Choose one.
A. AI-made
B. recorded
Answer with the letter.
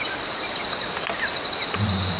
B